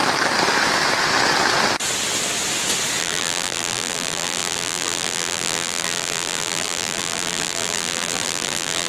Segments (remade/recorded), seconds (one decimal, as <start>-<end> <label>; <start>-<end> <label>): 0.0-3.0 recorded; 3.0-8.9 remade